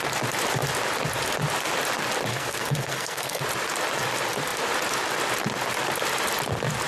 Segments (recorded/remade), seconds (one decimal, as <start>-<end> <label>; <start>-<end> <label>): 0.0-2.3 recorded; 2.3-3.4 remade; 3.4-6.9 recorded